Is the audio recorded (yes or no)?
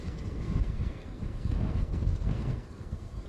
no